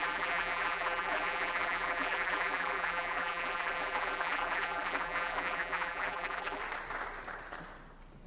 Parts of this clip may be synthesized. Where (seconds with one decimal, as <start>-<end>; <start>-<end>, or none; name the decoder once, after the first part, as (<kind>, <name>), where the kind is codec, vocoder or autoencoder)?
0.0-6.6 (vocoder, BigVGAN v2)

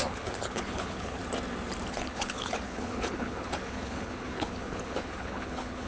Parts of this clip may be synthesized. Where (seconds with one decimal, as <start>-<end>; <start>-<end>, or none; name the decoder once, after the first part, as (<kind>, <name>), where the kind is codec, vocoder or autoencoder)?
0.0-1.2 (codec, HILCodec); 1.9-5.9

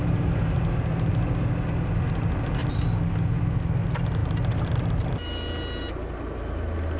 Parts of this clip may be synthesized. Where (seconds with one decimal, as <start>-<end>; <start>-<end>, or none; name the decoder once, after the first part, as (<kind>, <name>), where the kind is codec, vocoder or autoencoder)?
none

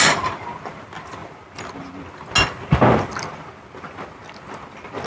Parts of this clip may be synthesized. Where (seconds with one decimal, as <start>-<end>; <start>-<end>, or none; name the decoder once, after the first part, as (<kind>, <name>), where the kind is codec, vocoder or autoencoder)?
none

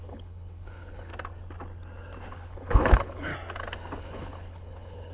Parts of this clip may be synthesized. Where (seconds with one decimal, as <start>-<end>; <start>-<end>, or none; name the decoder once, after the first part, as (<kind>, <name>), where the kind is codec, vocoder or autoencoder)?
0.0-1.1 (codec, HILCodec); 2.3-3.3; 4.0-5.1

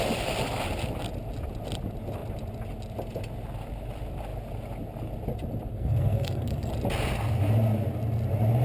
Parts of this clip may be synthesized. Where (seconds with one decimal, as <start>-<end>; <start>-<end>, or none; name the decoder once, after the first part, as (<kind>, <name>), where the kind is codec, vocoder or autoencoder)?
5.7-6.7 (codec, SNAC)

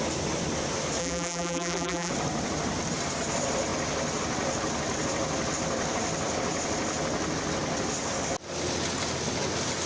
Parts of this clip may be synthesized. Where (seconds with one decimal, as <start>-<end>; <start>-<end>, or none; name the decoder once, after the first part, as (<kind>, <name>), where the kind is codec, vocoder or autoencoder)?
1.0-2.1 (vocoder, BigVGAN v2)

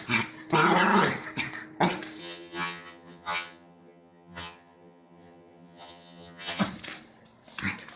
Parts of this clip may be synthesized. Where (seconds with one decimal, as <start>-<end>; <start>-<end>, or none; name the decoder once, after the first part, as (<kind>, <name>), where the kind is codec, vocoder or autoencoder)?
2.2-6.6 (vocoder, HiFi-GAN)